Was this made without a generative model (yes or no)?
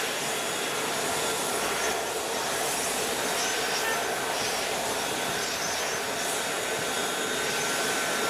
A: yes